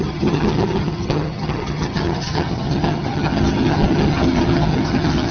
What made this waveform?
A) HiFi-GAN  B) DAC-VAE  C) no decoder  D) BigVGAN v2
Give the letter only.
A